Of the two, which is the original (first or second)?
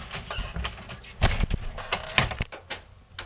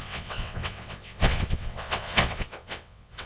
first